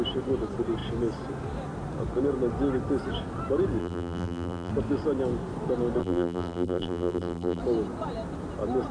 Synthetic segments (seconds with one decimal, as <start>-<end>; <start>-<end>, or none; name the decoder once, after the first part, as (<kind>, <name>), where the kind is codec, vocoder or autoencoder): 3.8-4.7 (vocoder, BigVGAN v2); 6.0-7.6